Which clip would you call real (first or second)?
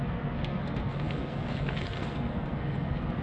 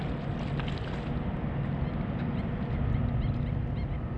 second